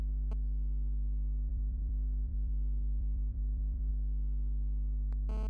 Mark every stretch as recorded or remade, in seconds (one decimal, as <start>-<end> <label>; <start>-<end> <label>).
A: 0.0-1.5 recorded; 1.5-3.9 remade; 3.9-5.5 recorded

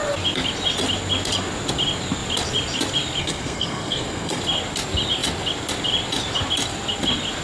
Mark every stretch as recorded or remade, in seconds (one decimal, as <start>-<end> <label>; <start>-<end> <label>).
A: 0.0-3.2 recorded; 3.2-4.4 remade; 4.4-7.4 recorded

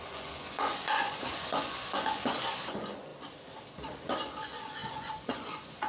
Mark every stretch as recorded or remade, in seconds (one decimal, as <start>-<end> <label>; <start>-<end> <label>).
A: 0.0-3.1 remade; 3.1-4.0 recorded; 4.0-5.9 remade

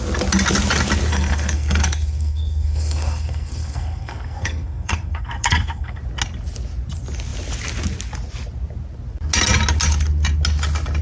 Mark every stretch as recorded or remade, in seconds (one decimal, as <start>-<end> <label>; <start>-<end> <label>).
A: 0.0-1.1 recorded; 1.1-6.0 remade; 6.0-11.0 recorded

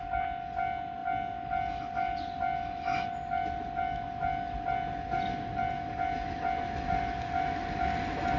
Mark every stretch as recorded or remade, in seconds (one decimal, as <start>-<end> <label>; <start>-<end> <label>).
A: 0.0-8.4 recorded

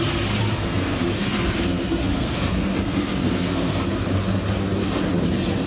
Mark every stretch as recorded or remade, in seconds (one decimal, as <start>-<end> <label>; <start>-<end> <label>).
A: 0.0-0.6 recorded; 0.6-3.8 remade; 3.8-5.7 recorded

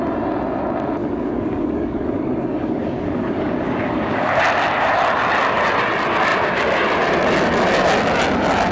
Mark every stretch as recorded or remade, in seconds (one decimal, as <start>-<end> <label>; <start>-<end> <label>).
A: 0.0-1.0 recorded; 1.0-4.4 remade; 4.4-8.7 recorded

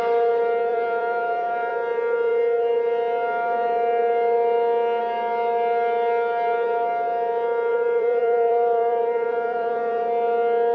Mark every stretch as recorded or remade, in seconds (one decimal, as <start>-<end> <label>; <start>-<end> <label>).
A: 0.0-0.7 recorded; 0.7-1.7 remade; 1.7-7.7 recorded; 7.7-10.0 remade; 10.0-10.7 recorded